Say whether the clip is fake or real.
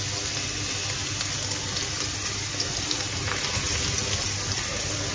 real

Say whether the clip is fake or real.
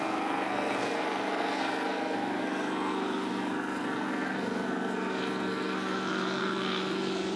fake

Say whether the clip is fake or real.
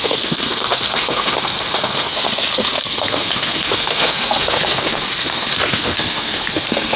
fake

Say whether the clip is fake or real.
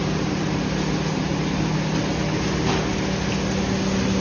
real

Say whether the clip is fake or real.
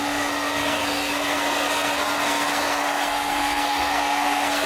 fake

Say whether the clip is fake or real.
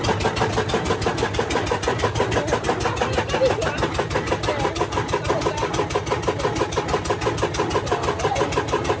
real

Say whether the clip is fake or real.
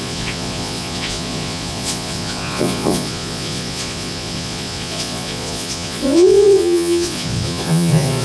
fake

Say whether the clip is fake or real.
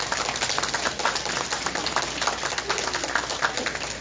real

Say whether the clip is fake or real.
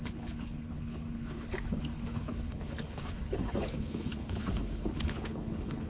fake